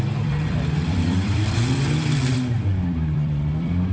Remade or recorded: remade